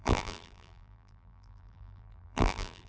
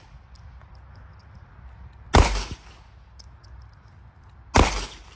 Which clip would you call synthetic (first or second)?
first